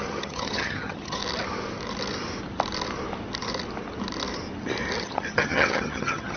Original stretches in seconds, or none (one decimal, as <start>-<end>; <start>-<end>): 1.2-5.0